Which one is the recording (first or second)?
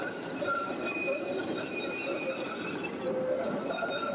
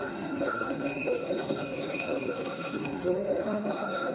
first